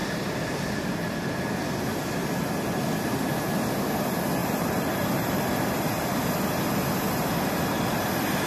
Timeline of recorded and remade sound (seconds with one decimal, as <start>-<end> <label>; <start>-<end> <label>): 0.0-0.7 remade; 0.7-4.4 recorded; 4.4-6.1 remade; 6.1-8.5 recorded